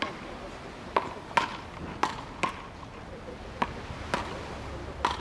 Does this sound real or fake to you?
real